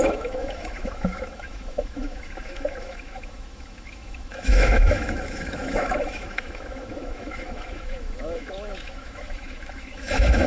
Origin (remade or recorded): remade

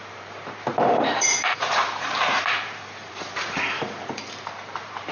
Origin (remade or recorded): remade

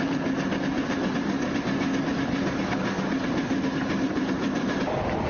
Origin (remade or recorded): recorded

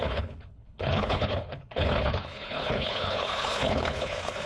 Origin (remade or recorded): remade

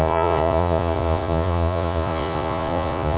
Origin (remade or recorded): remade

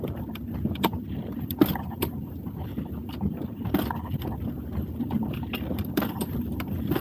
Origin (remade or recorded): recorded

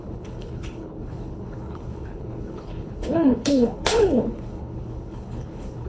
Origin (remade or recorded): remade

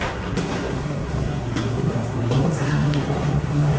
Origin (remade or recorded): remade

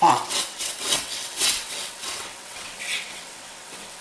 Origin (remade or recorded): remade